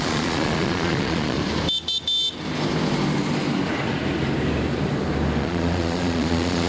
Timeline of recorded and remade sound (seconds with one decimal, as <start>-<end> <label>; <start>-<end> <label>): 0.0-1.4 remade; 1.4-5.4 recorded; 5.4-6.7 remade

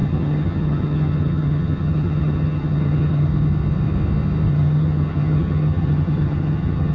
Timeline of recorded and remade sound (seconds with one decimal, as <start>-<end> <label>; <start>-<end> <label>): 0.0-3.3 remade; 3.3-4.5 recorded; 4.5-6.9 remade

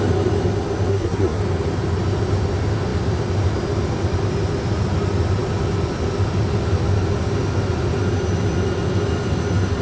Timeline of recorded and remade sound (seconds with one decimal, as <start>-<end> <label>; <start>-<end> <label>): 0.0-0.9 recorded; 0.9-1.4 remade; 1.4-9.8 recorded